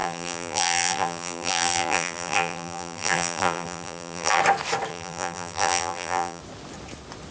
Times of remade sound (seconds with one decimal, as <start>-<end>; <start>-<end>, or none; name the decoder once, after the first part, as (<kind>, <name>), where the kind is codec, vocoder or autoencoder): 0.0-4.4 (vocoder, BigVGAN v2); 4.9-6.4